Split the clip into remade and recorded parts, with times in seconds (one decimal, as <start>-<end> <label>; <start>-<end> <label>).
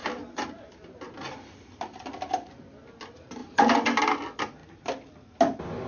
0.0-3.4 recorded; 3.4-4.0 remade; 4.0-4.6 recorded; 4.6-5.1 remade; 5.1-5.9 recorded